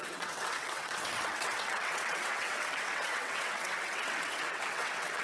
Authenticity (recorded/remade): remade